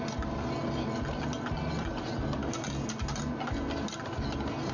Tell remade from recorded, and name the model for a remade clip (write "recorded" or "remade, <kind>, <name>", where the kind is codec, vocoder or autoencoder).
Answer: recorded